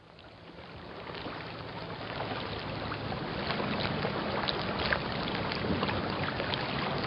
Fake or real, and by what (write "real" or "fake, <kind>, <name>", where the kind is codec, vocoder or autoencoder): real